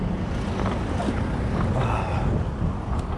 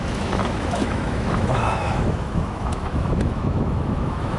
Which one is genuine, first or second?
first